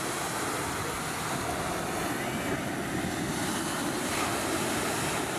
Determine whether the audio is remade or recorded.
recorded